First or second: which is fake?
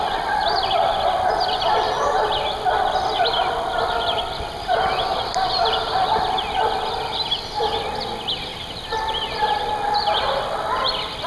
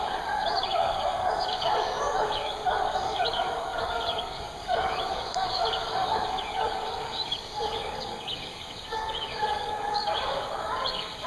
second